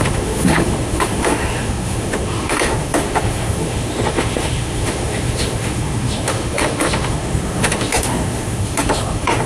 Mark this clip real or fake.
fake